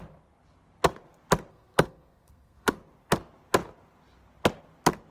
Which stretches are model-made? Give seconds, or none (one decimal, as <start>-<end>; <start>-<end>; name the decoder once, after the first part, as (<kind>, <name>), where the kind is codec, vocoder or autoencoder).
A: 1.5-2.7 (codec, SNAC)